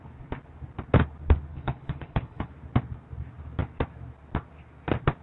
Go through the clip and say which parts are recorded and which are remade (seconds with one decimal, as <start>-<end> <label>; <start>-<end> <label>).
0.0-1.5 recorded; 1.5-2.5 remade; 2.5-5.2 recorded